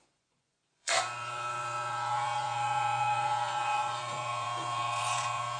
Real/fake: fake